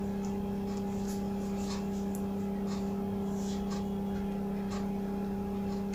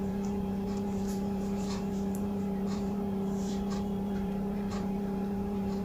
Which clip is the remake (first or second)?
second